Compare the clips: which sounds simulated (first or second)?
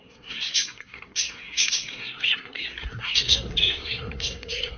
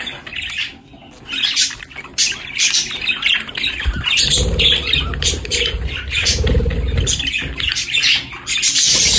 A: first